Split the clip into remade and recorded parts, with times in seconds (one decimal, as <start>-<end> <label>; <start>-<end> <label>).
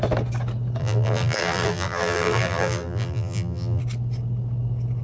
0.0-0.8 recorded; 0.8-3.8 remade; 3.8-5.0 recorded